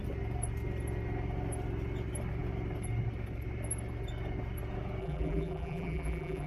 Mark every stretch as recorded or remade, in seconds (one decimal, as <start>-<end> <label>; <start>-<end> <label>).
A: 0.0-5.0 recorded; 5.0-6.5 remade